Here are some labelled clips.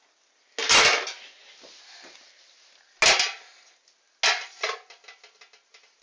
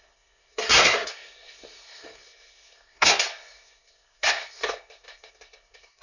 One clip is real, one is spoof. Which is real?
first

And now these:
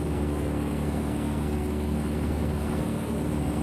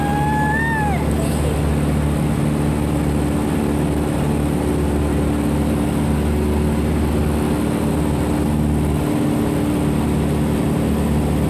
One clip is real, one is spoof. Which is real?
second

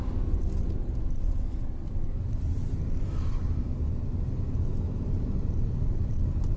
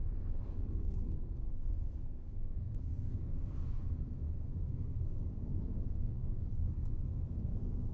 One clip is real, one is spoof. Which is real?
first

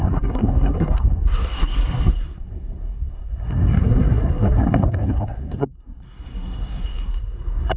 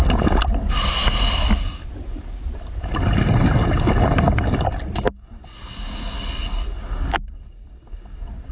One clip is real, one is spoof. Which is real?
second